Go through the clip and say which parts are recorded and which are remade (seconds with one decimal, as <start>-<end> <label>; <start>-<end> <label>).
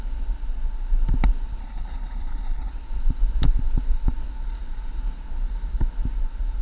0.0-1.6 recorded; 1.6-2.7 remade; 2.7-6.6 recorded